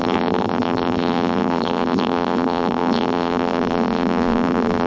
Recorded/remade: remade